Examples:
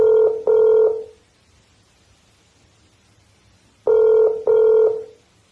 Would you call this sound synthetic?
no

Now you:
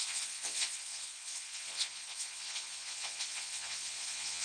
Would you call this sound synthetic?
yes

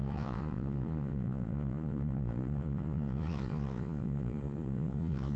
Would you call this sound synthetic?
yes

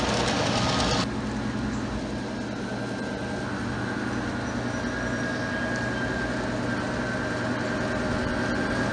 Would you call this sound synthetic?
no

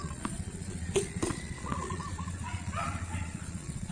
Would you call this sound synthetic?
yes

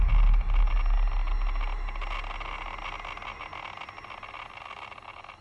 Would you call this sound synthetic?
no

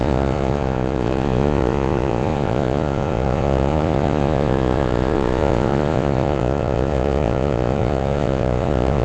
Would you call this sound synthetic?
yes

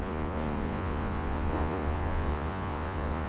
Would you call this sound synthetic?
yes